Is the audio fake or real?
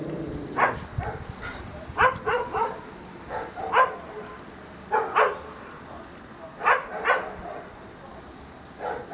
real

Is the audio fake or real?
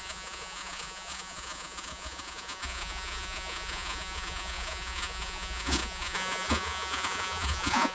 fake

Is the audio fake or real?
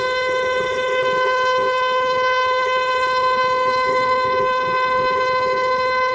fake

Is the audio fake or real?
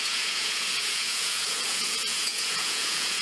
fake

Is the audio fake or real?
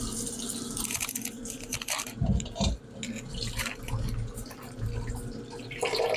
real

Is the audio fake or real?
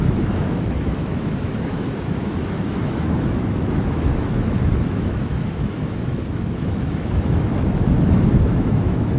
fake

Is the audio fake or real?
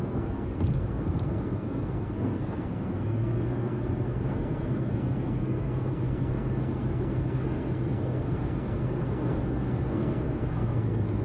fake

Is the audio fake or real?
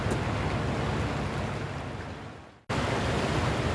real